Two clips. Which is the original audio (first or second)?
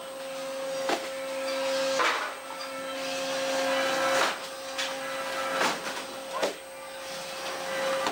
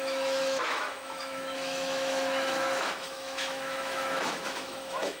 first